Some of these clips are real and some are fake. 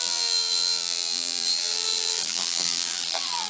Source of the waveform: fake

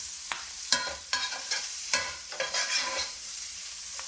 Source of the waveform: fake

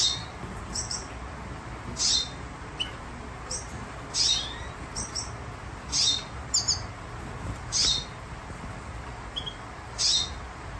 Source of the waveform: real